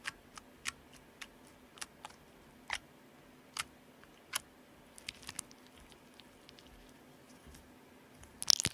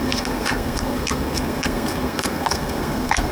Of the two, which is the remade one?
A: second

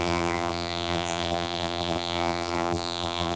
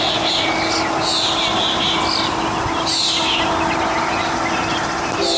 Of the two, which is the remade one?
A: first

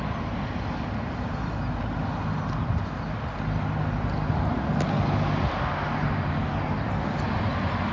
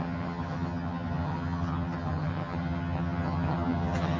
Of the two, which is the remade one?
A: second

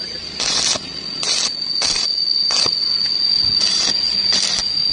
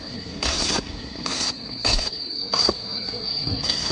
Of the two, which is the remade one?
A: second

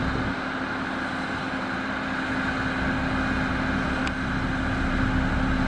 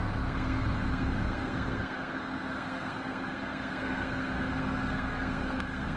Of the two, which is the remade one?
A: second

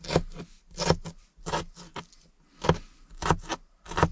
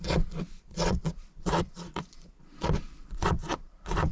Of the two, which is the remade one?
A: second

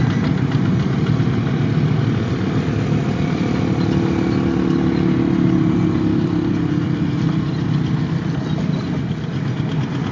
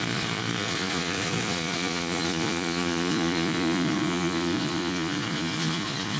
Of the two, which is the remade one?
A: second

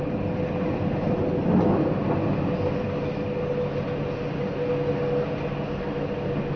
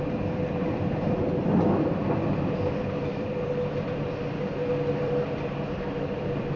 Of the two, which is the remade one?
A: second